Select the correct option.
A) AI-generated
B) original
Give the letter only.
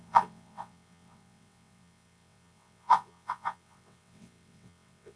A